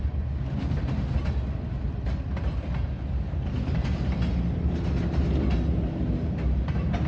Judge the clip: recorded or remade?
recorded